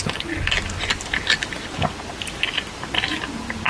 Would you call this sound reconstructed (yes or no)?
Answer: no